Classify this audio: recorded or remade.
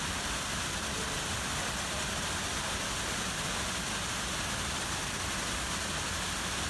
recorded